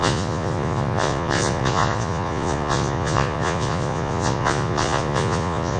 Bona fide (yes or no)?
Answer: no